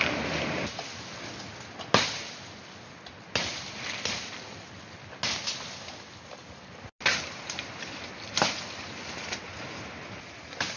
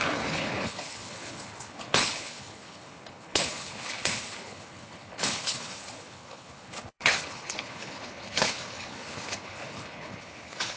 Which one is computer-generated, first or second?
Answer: second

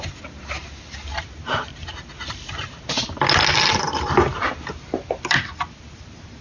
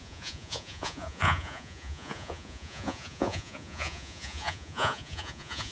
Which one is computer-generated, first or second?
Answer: second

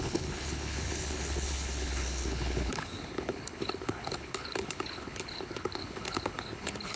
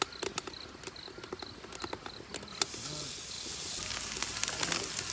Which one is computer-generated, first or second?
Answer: first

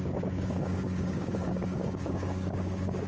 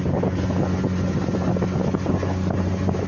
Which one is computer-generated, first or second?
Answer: first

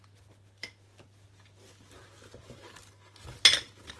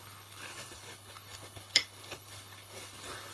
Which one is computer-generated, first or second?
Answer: second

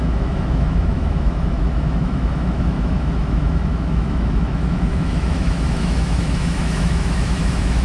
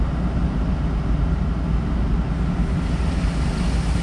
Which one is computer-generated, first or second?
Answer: first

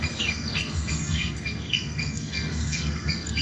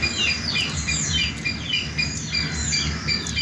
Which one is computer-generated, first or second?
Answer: first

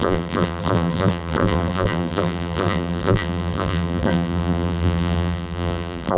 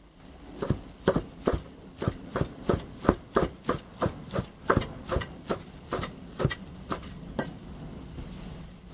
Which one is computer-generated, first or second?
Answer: first